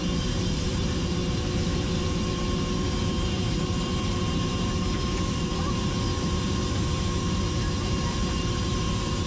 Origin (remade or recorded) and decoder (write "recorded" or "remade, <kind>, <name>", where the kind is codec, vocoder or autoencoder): remade, vocoder, BigVGAN v2